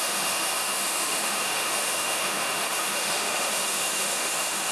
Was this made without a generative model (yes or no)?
no